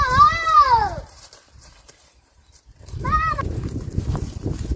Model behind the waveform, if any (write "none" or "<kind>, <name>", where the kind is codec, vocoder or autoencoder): vocoder, BigVGAN v2